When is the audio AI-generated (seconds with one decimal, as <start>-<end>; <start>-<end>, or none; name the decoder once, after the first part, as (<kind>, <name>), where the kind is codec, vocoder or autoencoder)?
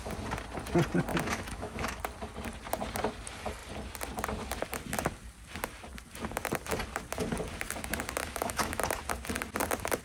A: 1.1-2.0 (autoencoder, DAC-VAE); 8.2-8.8